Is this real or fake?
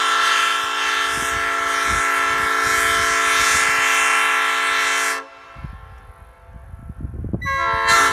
real